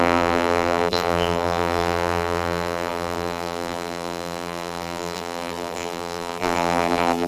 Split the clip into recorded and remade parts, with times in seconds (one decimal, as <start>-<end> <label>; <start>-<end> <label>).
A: 0.0-7.3 remade